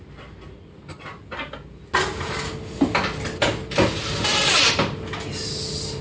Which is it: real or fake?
real